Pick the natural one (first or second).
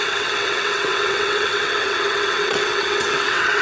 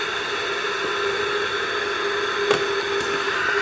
second